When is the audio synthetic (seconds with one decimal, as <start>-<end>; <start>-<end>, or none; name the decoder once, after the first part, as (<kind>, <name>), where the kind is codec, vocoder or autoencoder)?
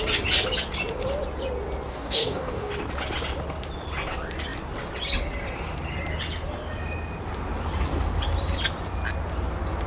1.9-2.7 (codec, DAC)